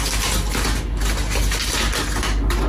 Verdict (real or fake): real